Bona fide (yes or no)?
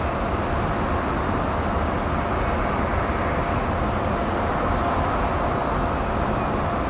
yes